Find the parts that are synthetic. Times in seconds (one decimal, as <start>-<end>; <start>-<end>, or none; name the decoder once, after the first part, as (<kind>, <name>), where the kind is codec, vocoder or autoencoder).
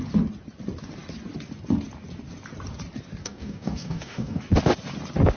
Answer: 3.2-4.4 (codec, DAC)